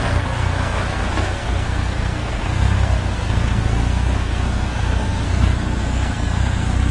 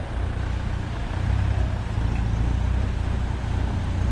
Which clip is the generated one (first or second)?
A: first